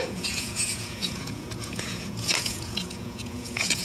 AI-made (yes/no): yes